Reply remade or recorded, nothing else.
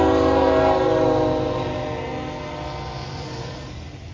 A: recorded